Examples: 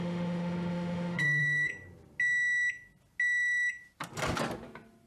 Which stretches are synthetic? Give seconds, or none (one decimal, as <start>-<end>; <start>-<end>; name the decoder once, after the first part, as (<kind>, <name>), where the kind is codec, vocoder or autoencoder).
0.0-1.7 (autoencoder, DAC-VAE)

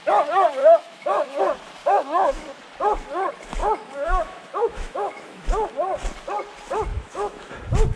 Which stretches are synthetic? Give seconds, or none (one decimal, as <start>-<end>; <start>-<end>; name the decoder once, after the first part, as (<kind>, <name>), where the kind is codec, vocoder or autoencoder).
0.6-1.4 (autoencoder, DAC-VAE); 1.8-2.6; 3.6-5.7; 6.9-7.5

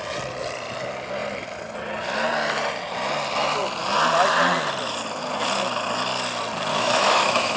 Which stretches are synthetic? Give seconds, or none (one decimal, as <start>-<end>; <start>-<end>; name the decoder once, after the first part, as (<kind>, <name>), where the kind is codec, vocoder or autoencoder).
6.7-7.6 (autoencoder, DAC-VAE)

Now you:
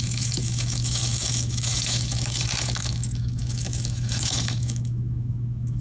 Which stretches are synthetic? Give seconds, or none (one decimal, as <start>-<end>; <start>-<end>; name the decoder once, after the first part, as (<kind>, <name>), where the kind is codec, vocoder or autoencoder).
0.0-5.8 (autoencoder, DAC-VAE)